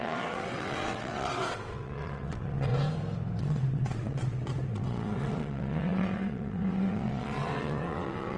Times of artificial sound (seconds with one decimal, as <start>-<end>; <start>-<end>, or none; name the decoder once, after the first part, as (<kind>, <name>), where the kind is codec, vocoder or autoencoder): 0.0-2.7 (vocoder, WaveNeXt); 3.4-8.4